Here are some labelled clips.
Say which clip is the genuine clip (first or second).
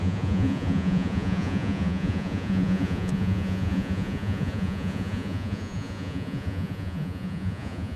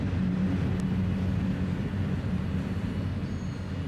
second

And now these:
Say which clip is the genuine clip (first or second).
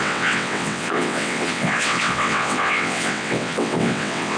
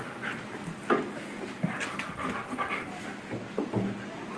second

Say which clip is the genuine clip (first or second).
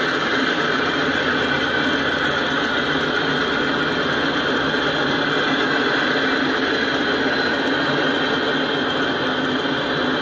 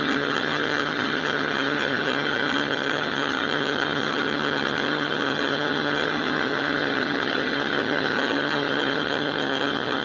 first